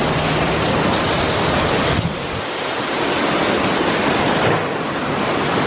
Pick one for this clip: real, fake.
real